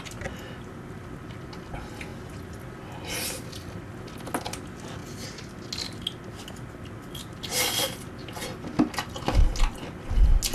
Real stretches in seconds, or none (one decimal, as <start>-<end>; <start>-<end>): 0.0-10.5